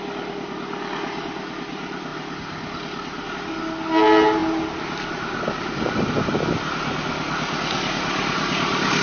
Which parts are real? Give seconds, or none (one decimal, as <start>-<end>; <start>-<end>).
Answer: 0.0-9.0